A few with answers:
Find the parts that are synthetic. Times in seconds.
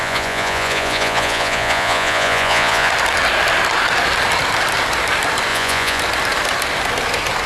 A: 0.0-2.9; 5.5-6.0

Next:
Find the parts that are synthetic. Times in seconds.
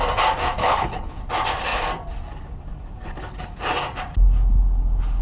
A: 0.6-1.2